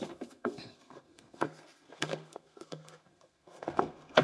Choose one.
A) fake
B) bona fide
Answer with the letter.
A